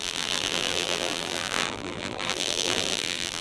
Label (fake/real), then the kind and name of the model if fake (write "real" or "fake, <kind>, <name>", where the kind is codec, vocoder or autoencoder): fake, vocoder, BigVGAN v2